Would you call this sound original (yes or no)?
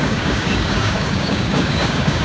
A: no